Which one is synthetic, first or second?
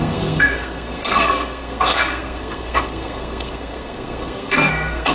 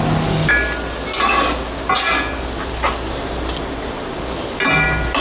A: first